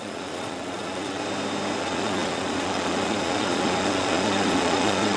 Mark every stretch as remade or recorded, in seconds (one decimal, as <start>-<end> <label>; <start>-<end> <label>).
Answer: 0.0-1.2 remade; 1.2-1.8 recorded; 1.8-5.2 remade